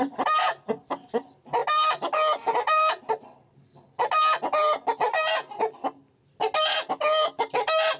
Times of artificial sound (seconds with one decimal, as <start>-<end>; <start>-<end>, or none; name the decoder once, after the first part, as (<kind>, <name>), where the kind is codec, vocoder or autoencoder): none